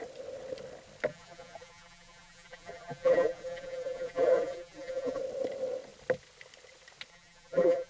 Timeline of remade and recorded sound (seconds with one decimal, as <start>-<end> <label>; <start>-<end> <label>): 0.0-1.1 recorded; 1.1-5.2 remade; 5.2-7.1 recorded; 7.1-7.9 remade